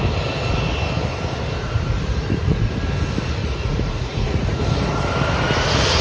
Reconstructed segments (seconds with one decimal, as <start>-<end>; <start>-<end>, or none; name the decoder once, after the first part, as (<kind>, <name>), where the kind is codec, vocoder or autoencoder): 1.6-2.7 (vocoder, Vocos); 3.4-4.6